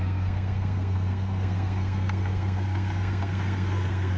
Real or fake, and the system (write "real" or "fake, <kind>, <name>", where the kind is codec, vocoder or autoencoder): fake, codec, SNAC